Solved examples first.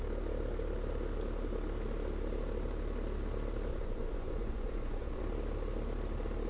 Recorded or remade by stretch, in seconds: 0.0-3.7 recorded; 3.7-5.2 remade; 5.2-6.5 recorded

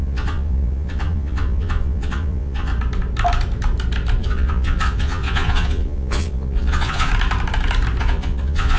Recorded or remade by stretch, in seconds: 0.0-2.7 remade; 2.7-4.2 recorded; 4.2-7.1 remade; 7.1-8.0 recorded; 8.0-8.8 remade

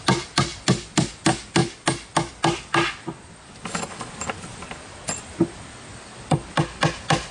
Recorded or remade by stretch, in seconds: 0.0-7.3 recorded

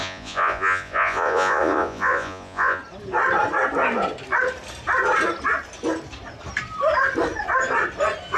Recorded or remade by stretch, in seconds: 0.0-2.8 remade; 2.8-8.4 recorded